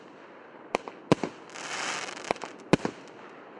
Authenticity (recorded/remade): recorded